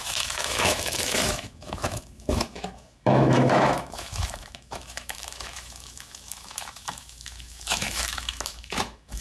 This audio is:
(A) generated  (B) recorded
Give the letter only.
A